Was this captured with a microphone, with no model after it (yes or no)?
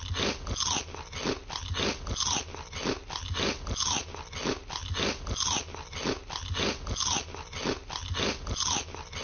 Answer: yes